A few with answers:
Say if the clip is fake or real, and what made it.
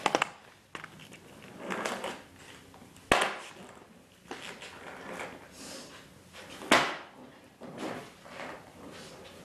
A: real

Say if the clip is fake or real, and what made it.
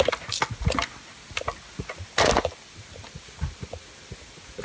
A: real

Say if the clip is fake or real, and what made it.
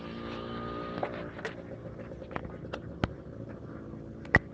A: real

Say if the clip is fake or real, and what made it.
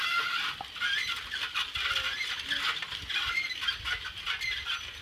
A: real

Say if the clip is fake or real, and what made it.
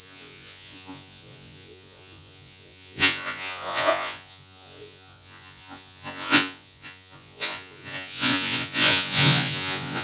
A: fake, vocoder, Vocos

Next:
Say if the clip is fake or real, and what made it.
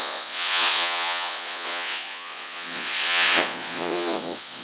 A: fake, vocoder, Vocos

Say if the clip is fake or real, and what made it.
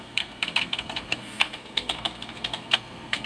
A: fake, codec, SNAC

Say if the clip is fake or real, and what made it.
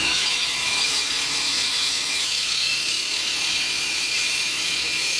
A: fake, autoencoder, DAC-VAE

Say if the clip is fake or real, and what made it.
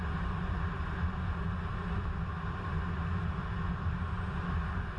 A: real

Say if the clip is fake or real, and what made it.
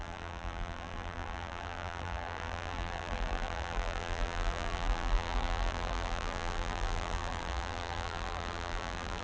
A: fake, vocoder, BigVGAN v2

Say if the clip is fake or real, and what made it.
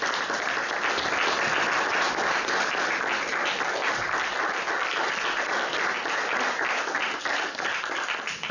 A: fake, vocoder, BigVGAN v2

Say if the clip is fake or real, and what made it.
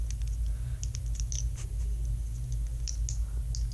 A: real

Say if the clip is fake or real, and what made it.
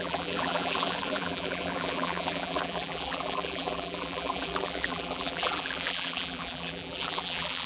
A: fake, vocoder, BigVGAN v2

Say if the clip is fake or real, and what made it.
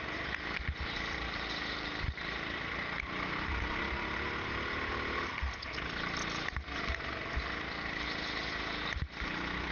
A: real